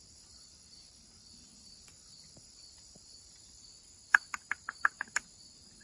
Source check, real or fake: fake